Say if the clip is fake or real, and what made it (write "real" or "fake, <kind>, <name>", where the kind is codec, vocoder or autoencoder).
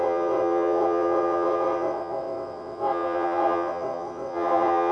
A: fake, vocoder, WaveNeXt